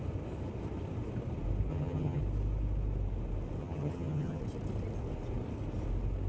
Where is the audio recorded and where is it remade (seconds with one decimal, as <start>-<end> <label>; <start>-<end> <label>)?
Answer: 0.0-1.7 recorded; 1.7-2.2 remade; 2.2-3.6 recorded; 3.6-4.4 remade; 4.4-6.3 recorded